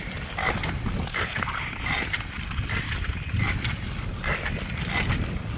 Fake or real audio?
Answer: real